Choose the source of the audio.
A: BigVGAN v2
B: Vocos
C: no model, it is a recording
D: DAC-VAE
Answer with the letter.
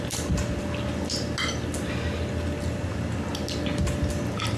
C